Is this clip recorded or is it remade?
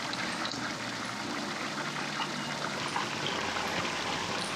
recorded